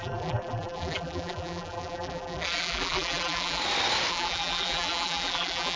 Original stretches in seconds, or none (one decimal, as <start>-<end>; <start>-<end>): 3.6-4.1